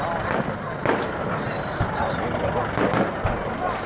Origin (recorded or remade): recorded